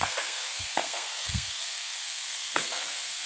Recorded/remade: remade